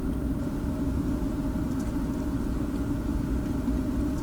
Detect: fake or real real